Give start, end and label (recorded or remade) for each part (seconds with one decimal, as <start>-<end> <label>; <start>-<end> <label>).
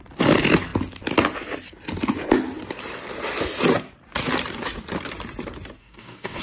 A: 0.0-5.8 recorded; 5.8-6.4 remade